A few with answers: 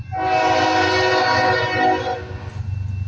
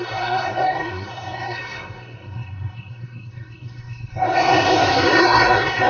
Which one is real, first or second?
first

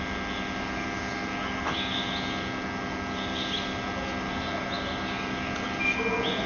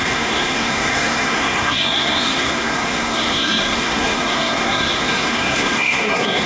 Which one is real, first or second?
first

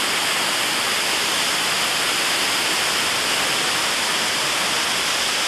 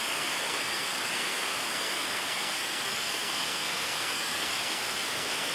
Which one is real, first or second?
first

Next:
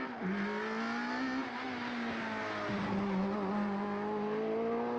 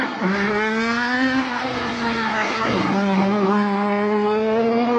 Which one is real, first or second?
first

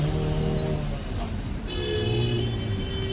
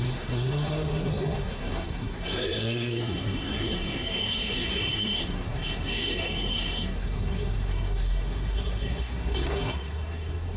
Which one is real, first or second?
first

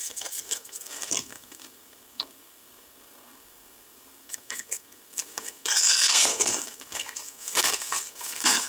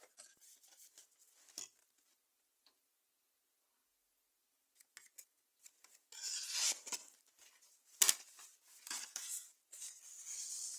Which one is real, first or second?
second